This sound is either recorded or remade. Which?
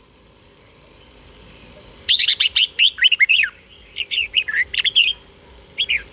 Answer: remade